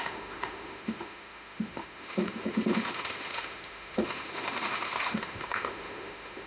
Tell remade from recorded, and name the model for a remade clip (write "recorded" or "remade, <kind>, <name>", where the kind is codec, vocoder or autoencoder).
remade, autoencoder, DAC-VAE